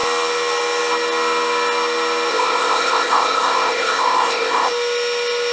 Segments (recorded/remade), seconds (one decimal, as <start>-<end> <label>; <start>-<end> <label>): 0.0-2.3 recorded; 2.3-4.7 remade; 4.7-5.5 recorded